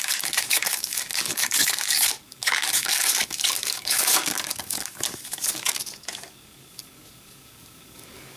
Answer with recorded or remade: remade